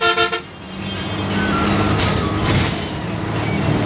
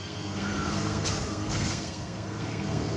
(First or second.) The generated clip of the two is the second